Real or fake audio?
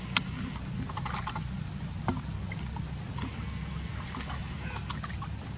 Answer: real